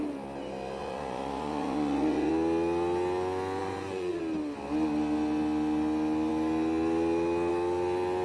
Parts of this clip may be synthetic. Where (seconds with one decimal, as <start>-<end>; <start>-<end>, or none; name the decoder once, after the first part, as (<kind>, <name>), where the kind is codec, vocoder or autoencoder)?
0.8-2.3 (vocoder, Vocos); 3.6-4.2